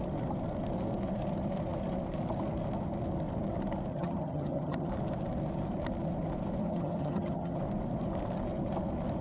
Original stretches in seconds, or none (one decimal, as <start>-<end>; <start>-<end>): 0.0-3.9; 4.9-6.6; 7.6-9.2